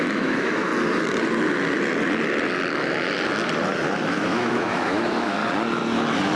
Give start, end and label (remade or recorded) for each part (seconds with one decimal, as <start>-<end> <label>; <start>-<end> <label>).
0.0-0.7 remade; 0.7-4.1 recorded; 4.1-5.4 remade; 5.4-6.4 recorded